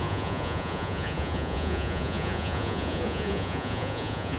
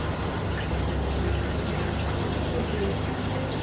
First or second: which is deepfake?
first